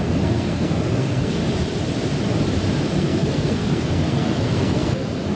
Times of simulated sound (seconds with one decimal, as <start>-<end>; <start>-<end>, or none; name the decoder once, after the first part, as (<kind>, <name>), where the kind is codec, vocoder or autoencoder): 0.0-1.4 (codec, SNAC); 2.9-5.4